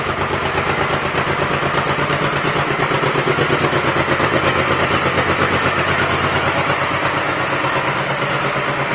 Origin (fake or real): real